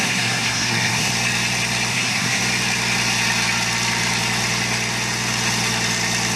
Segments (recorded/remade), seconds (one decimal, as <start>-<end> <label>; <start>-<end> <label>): 0.0-1.1 remade; 1.1-1.9 recorded; 1.9-2.4 remade; 2.4-6.4 recorded